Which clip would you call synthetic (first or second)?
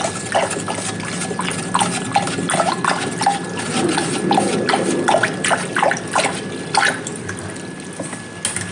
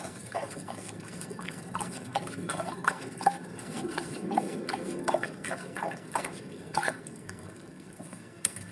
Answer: second